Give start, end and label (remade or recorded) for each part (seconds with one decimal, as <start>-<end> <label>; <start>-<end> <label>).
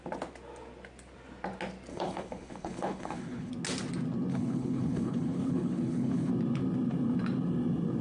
0.0-1.9 recorded; 1.9-3.5 remade; 3.5-4.3 recorded; 4.3-6.3 remade; 6.3-8.0 recorded